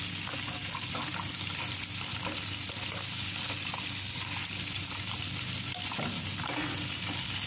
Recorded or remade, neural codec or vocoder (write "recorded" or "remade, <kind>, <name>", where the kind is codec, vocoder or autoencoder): recorded